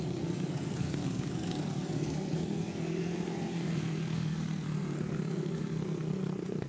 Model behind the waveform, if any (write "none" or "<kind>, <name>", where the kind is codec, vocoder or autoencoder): codec, SNAC